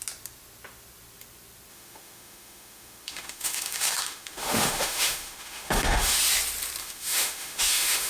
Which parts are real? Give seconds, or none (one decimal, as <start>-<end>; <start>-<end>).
0.0-1.7; 6.2-6.8